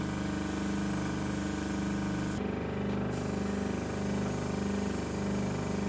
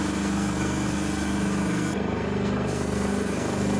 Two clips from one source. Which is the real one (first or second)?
first